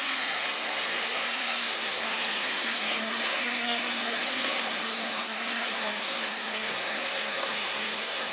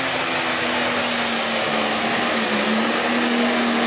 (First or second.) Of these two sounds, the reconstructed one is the first